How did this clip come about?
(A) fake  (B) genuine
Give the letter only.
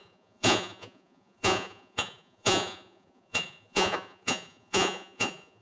A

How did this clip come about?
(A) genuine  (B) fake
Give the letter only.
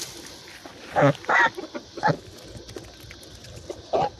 A